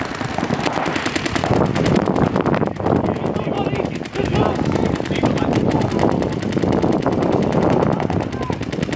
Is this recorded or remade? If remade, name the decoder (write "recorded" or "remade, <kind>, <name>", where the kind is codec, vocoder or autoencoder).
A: recorded